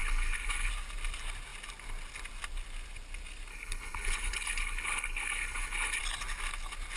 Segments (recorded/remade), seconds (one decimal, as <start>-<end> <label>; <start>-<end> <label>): 0.0-0.7 remade; 0.7-3.5 recorded; 3.5-6.0 remade; 6.0-7.0 recorded

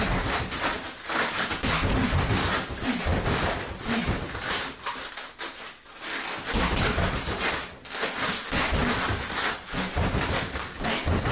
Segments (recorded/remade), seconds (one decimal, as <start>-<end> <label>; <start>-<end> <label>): 0.0-11.3 recorded

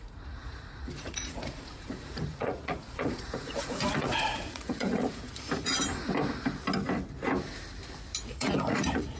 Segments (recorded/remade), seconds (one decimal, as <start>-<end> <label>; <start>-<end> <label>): 0.0-5.7 remade; 5.7-8.3 recorded; 8.3-9.2 remade

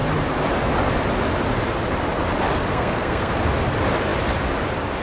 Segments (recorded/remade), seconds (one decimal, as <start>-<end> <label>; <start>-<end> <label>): 0.0-2.7 recorded; 2.7-3.3 remade; 3.3-5.0 recorded

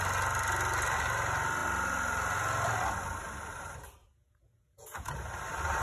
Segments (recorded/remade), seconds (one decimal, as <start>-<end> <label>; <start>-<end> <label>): 0.0-4.0 recorded; 4.0-5.1 remade; 5.1-5.8 recorded

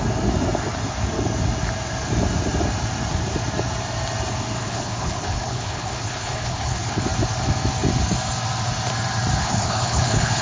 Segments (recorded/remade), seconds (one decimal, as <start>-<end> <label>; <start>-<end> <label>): 0.0-4.6 recorded; 4.6-7.0 remade; 7.0-9.4 recorded; 9.4-10.4 remade